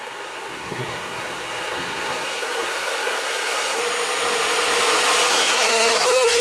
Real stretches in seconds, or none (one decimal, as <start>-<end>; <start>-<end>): 3.8-5.3